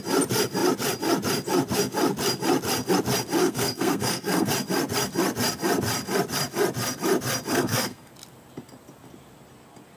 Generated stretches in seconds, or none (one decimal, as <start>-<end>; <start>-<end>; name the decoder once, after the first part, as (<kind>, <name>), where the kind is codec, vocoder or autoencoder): 3.4-4.5 (codec, SNAC); 7.5-8.1